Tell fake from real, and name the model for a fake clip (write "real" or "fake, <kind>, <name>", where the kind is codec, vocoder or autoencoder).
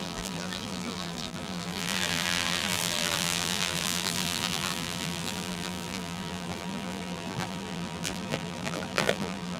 fake, vocoder, BigVGAN v2